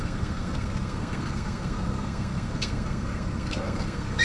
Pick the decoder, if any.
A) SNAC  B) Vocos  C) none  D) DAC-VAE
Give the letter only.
A